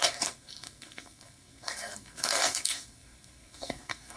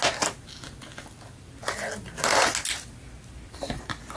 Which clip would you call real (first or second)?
second